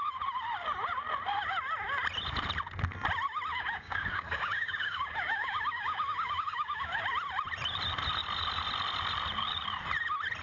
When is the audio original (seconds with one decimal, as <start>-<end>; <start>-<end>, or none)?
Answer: 0.0-3.5; 7.0-10.4